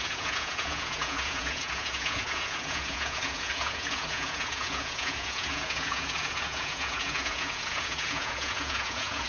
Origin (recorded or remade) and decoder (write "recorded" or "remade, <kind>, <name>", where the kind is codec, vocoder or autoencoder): remade, vocoder, Vocos